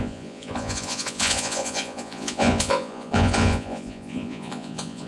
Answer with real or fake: fake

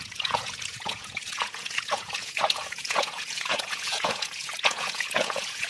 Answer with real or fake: fake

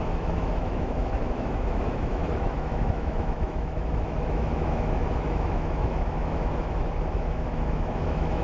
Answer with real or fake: fake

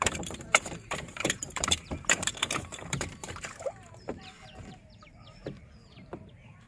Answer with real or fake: fake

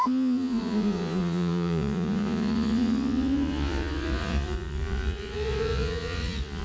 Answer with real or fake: fake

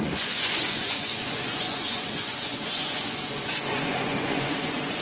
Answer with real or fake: fake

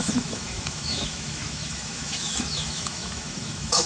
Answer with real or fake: fake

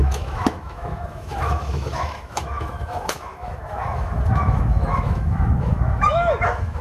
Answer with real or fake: fake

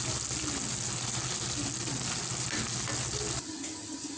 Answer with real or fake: real